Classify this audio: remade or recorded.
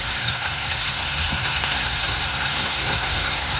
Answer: remade